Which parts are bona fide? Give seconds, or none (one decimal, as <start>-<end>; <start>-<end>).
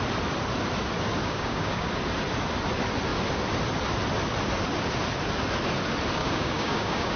0.0-1.2; 1.9-6.2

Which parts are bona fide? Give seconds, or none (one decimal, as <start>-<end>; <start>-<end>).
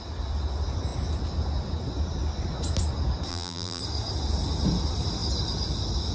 0.0-3.3; 3.8-6.1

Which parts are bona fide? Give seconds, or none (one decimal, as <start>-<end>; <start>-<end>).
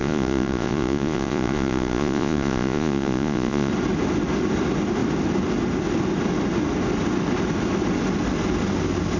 3.7-9.2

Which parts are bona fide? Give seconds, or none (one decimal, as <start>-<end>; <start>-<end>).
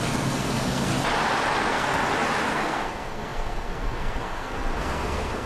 0.9-1.6; 2.0-2.5